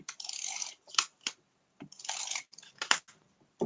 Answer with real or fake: real